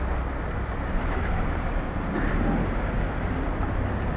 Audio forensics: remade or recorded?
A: recorded